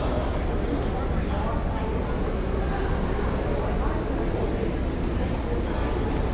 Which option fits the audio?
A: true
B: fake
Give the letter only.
A